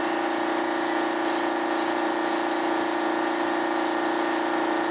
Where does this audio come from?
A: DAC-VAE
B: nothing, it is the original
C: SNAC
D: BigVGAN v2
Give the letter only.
B